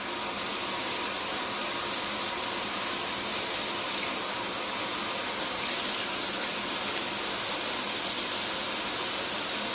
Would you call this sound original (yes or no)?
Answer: yes